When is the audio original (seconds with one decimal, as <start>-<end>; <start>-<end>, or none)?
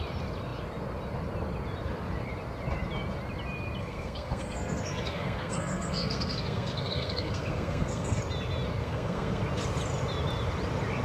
0.0-3.8; 8.2-8.8; 9.4-11.0